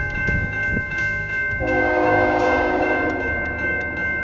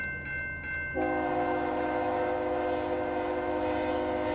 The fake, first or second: first